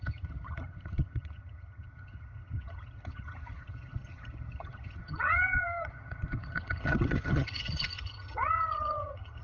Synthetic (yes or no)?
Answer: yes